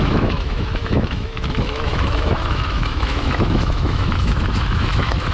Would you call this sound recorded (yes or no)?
no